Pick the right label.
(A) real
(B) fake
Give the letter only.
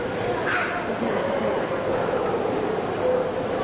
A